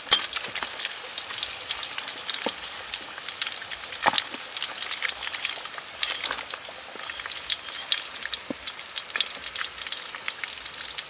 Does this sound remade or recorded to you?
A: recorded